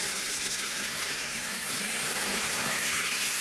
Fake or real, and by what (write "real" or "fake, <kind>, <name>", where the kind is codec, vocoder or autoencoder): fake, codec, SNAC